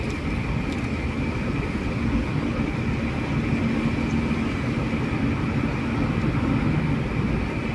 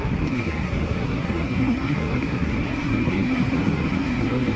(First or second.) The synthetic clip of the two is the second